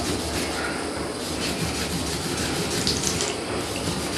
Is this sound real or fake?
real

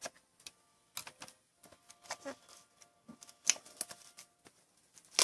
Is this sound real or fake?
real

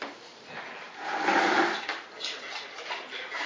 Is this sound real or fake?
real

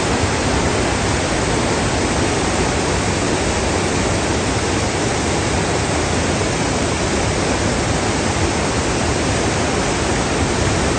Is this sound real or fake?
real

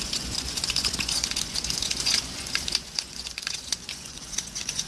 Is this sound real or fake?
fake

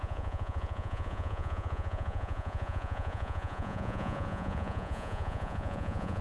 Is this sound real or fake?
fake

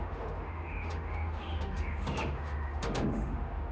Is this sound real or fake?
fake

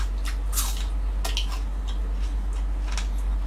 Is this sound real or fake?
real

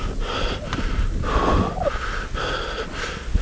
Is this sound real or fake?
real